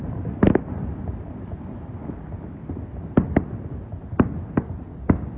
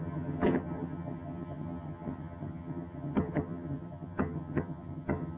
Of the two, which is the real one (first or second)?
first